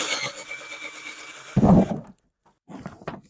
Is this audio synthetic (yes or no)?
no